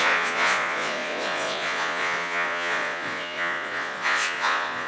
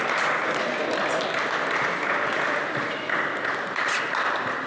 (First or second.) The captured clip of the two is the second